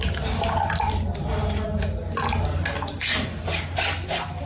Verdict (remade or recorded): recorded